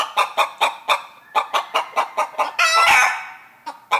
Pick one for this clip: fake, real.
real